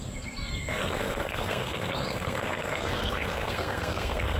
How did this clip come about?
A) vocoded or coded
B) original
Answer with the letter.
A